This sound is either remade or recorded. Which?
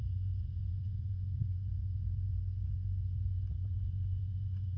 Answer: remade